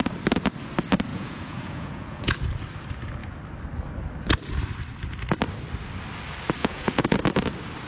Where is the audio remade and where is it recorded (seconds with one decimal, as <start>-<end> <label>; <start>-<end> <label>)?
0.0-1.1 recorded; 1.1-2.4 remade; 2.4-6.6 recorded; 6.6-7.2 remade; 7.2-7.9 recorded